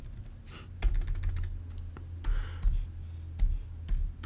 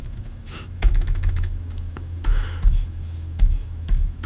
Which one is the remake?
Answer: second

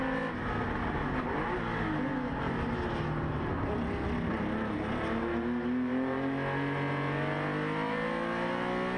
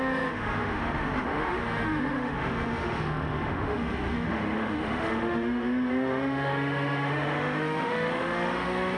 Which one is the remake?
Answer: second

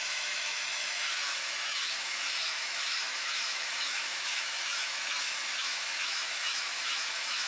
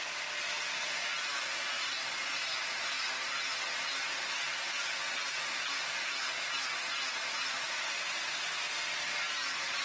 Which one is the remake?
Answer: first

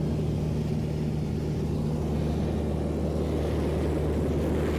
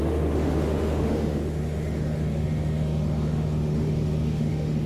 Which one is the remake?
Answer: second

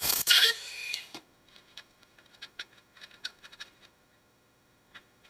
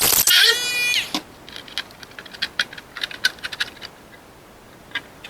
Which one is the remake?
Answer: first